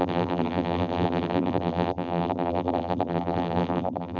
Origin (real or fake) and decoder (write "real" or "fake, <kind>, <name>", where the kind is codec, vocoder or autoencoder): fake, vocoder, BigVGAN v2